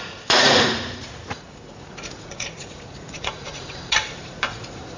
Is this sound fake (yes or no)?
yes